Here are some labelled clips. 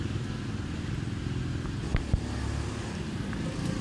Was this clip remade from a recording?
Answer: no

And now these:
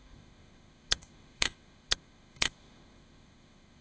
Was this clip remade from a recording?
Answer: yes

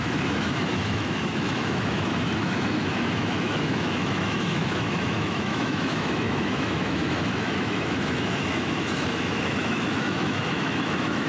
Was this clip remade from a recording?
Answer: yes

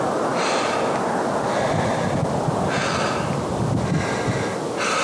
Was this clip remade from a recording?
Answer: no